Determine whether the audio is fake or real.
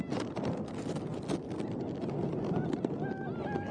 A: real